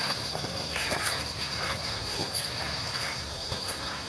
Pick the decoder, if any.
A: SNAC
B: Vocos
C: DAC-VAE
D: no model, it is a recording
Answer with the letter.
A